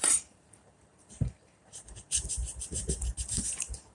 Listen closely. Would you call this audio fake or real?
fake